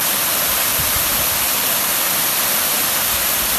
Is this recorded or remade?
recorded